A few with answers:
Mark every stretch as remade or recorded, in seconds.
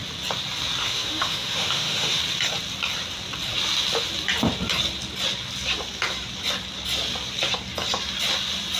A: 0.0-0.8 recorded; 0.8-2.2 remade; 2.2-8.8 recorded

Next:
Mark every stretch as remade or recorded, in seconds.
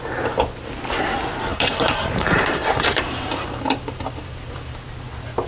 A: 0.0-1.5 recorded; 1.5-4.8 remade; 4.8-5.5 recorded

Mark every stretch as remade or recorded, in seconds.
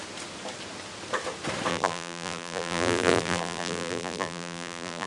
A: 0.0-1.7 recorded; 1.7-5.1 remade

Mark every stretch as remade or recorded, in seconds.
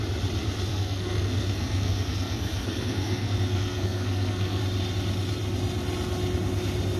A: 0.0-0.7 recorded; 0.7-4.6 remade; 4.6-7.0 recorded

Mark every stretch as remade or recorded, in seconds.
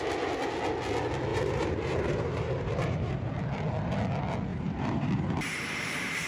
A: 0.0-1.3 recorded; 1.3-3.3 remade; 3.3-4.5 recorded; 4.5-6.3 remade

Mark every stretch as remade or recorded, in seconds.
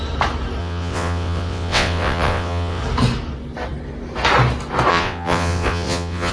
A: 0.0-0.6 recorded; 0.6-2.8 remade; 2.8-4.9 recorded; 4.9-6.3 remade